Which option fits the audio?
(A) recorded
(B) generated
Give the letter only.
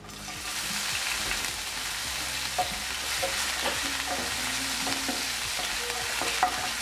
A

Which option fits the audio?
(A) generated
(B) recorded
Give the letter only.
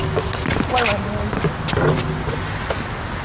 B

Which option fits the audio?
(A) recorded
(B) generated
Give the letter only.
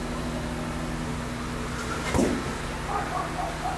A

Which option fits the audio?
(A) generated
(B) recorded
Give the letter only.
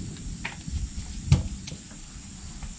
B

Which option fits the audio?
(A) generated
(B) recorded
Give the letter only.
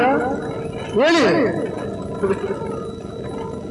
B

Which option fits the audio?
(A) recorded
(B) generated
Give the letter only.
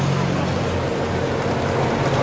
A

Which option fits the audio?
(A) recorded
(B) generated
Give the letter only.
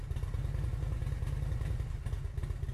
A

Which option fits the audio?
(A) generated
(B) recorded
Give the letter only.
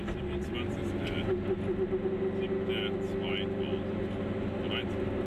B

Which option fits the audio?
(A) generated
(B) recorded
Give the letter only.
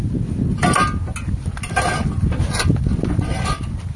B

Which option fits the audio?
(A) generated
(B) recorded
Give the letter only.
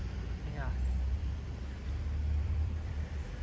A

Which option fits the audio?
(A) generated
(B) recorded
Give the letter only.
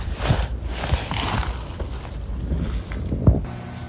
B